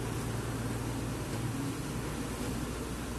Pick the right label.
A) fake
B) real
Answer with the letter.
B